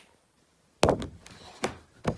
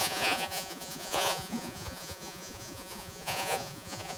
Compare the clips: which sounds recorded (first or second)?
first